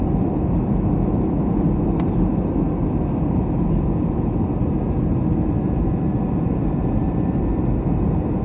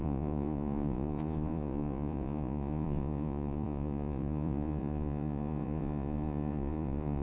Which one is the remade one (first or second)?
second